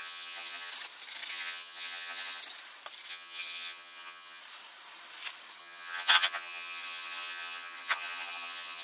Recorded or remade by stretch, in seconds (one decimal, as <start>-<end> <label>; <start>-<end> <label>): 0.0-0.7 remade; 0.7-1.3 recorded; 1.3-2.4 remade; 2.4-3.1 recorded; 3.1-4.4 remade; 4.4-5.6 recorded; 5.6-8.8 remade